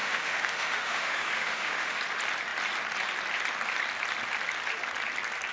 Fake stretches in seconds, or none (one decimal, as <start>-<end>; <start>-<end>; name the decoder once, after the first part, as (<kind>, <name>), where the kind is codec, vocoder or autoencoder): 0.0-2.0 (autoencoder, DAC-VAE)